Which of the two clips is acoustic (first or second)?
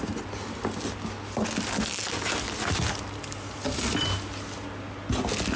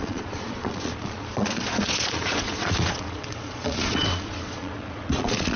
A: first